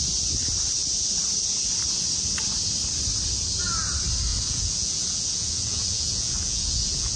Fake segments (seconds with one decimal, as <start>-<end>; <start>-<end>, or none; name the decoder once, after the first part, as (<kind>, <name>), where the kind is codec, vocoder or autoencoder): 4.3-7.2 (vocoder, Vocos)